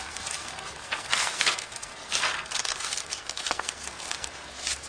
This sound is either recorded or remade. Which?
remade